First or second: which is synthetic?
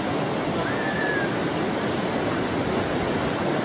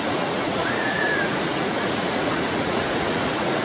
second